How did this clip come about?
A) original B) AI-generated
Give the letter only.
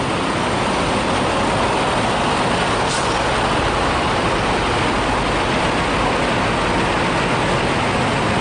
A